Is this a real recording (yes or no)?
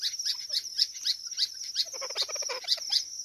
yes